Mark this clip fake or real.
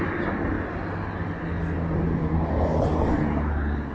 real